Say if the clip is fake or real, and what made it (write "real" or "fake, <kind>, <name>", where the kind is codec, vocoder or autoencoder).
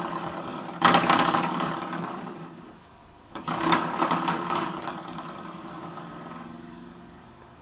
fake, codec, DAC